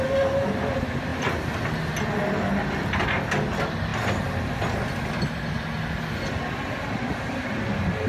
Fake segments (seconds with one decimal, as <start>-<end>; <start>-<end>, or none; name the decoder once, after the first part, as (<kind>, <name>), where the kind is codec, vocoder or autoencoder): none